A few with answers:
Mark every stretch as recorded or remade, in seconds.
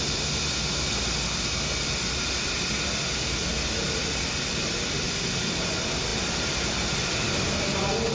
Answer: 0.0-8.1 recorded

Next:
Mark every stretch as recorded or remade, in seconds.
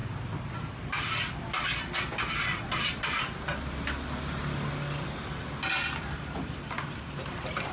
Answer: 0.0-7.7 recorded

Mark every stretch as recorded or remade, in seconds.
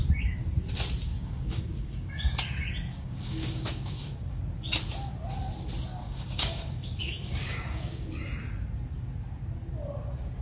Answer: 0.0-1.1 recorded; 1.1-2.1 remade; 2.1-2.9 recorded; 2.9-4.4 remade; 4.4-6.0 recorded; 6.0-8.1 remade; 8.1-10.4 recorded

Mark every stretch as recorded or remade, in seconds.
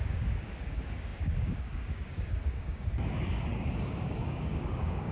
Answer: 0.0-5.1 remade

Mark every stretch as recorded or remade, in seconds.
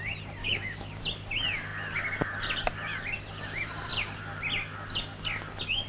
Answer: 0.0-0.4 recorded; 0.4-1.0 remade; 1.0-5.9 recorded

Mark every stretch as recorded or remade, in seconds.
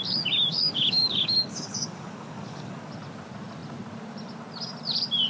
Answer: 0.0-0.5 recorded; 0.5-2.9 remade; 2.9-5.3 recorded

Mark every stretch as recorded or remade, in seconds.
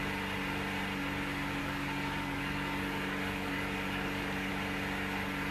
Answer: 0.0-1.6 recorded; 1.6-4.5 remade; 4.5-5.5 recorded